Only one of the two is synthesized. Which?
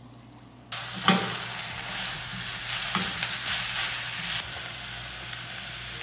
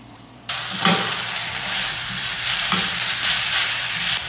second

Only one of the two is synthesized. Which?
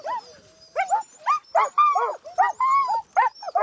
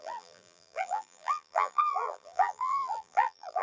second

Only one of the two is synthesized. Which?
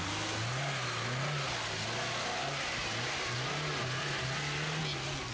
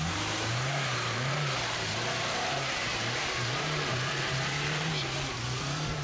second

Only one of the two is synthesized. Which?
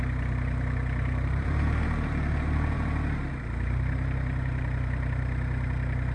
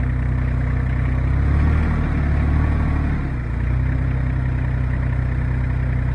first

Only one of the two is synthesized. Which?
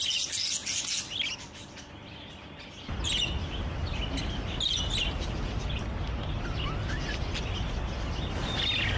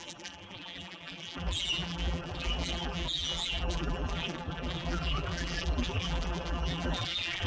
second